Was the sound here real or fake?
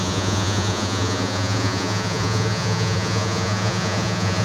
fake